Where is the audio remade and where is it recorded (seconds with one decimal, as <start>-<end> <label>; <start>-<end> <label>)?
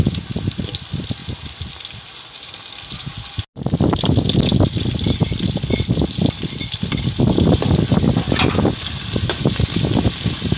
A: 0.0-10.6 recorded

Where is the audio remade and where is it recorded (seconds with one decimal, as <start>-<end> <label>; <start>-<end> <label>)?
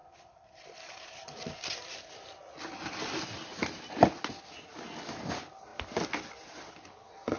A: 0.0-2.4 remade; 2.4-7.4 recorded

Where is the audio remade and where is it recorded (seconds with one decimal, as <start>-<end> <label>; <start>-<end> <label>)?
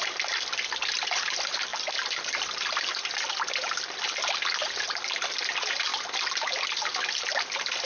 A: 0.0-7.8 recorded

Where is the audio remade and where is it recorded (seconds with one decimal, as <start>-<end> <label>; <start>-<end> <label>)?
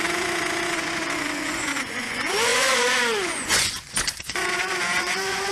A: 0.0-5.5 remade